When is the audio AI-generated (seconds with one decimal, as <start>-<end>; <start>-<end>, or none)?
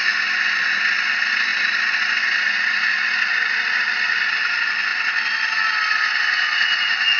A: none